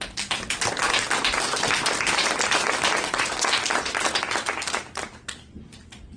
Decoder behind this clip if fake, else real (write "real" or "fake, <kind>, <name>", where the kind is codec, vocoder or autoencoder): real